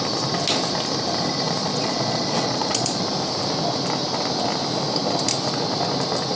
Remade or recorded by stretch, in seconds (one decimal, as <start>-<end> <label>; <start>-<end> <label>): 0.0-1.6 recorded; 1.6-3.0 remade; 3.0-6.4 recorded